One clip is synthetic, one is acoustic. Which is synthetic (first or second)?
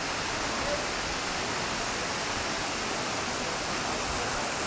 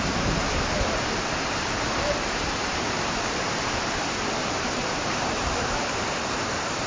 second